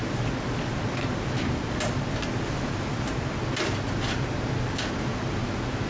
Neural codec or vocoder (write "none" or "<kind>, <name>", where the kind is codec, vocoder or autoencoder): none